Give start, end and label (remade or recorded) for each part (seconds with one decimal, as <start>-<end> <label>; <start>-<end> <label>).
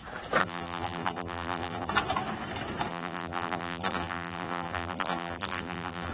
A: 0.0-0.4 recorded; 0.4-1.9 remade; 1.9-2.9 recorded; 2.9-6.1 remade